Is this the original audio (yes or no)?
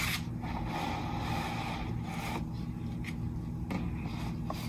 yes